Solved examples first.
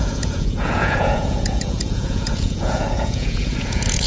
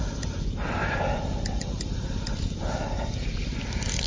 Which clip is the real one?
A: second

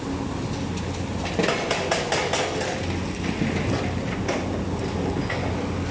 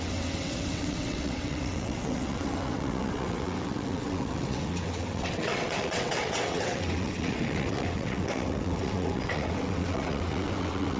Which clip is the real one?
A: first